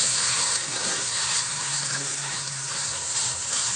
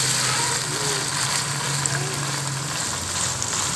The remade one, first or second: first